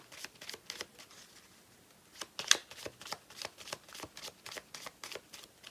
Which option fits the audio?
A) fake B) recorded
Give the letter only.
B